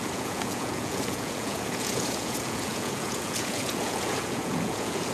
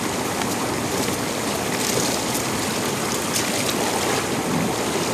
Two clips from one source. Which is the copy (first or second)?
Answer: first